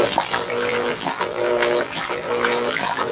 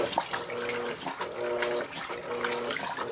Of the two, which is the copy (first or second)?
first